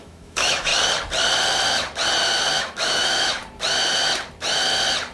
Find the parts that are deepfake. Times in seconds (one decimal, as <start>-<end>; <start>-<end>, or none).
0.0-0.7; 2.6-3.4